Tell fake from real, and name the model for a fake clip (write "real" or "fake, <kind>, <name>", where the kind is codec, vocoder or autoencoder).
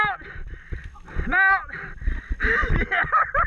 real